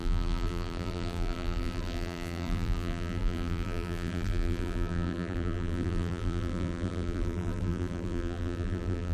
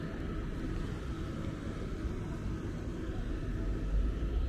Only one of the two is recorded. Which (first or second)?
second